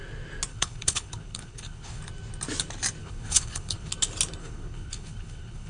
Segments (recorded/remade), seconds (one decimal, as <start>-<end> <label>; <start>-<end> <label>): 0.0-0.5 recorded; 0.5-2.0 remade; 2.0-3.0 recorded; 3.0-3.9 remade; 3.9-4.4 recorded; 4.4-5.7 remade